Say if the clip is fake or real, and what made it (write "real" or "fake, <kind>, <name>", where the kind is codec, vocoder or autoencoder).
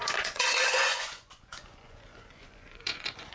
fake, vocoder, Vocos